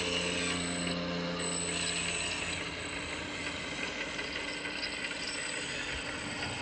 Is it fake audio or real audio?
real